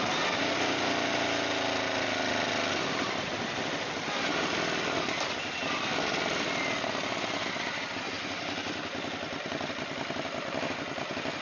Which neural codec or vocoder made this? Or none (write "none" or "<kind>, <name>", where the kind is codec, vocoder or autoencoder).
none